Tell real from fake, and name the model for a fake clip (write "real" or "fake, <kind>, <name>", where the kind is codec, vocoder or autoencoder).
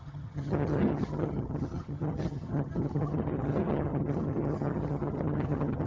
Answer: fake, vocoder, HiFi-GAN